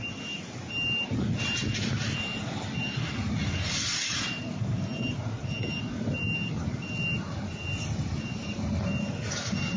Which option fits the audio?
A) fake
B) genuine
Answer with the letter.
B